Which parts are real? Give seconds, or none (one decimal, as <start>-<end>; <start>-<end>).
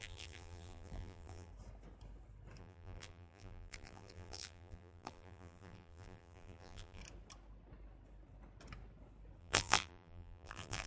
1.5-2.6; 7.0-9.4